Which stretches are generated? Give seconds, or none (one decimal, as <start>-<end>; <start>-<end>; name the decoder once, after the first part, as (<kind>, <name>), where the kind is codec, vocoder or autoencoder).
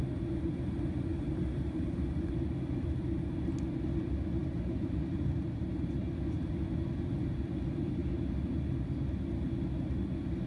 1.1-2.0 (vocoder, BigVGAN v2); 4.4-5.6